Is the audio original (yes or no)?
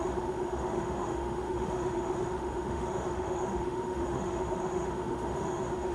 no